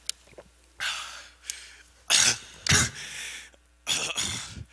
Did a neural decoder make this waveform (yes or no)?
no